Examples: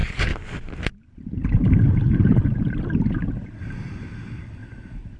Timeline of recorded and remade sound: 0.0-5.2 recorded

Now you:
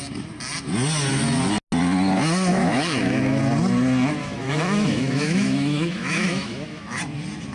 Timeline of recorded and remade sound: 0.0-2.5 recorded; 2.5-3.4 remade; 3.4-4.2 recorded; 4.2-7.0 remade; 7.0-7.5 recorded

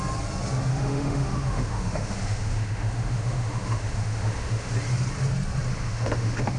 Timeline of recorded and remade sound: 0.0-0.7 recorded; 0.7-4.7 remade; 4.7-5.7 recorded; 5.7-6.6 remade

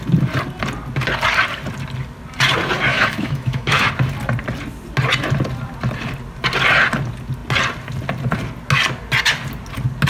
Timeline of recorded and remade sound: 0.0-2.9 recorded; 2.9-3.9 remade; 3.9-10.1 recorded

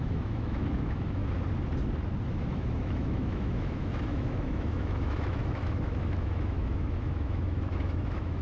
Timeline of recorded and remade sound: 0.0-1.2 remade; 1.2-2.4 recorded; 2.4-8.4 remade